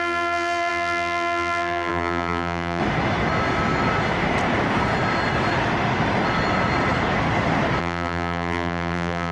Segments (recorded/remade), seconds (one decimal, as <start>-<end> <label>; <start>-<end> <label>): 0.0-2.8 remade; 2.8-7.8 recorded; 7.8-9.3 remade